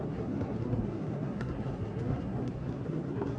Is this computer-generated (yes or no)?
yes